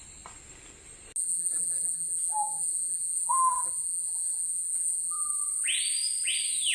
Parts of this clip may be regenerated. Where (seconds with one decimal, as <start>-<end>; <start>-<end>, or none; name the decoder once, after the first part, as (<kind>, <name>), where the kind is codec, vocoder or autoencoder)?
1.2-5.2 (vocoder, BigVGAN v2)